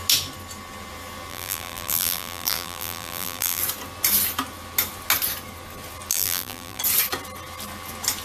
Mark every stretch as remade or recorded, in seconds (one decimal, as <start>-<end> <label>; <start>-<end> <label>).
0.0-1.3 recorded; 1.3-3.6 remade; 3.6-6.1 recorded; 6.1-6.8 remade; 6.8-8.2 recorded